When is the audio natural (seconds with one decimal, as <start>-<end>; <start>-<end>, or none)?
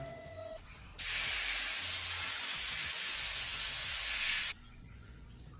0.9-2.3